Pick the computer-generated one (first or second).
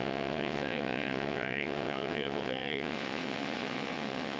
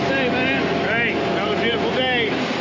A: first